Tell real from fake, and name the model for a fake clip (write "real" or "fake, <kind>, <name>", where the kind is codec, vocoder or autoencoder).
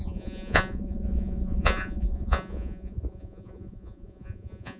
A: fake, vocoder, Vocos